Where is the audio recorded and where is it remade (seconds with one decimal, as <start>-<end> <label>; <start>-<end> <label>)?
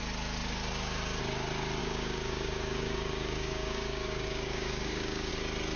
0.0-1.8 recorded; 1.8-5.3 remade; 5.3-5.8 recorded